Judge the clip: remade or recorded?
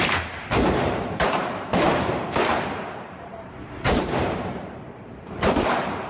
remade